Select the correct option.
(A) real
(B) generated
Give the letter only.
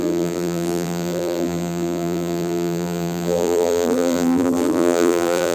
B